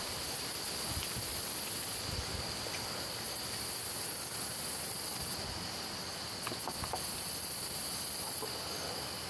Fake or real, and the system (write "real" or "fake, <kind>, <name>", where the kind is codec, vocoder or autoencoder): real